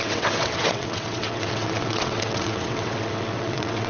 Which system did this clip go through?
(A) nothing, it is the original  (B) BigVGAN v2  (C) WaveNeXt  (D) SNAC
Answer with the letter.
C